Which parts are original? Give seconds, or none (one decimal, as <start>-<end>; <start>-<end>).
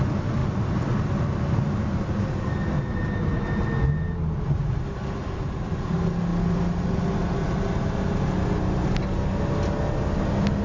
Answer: 0.0-10.6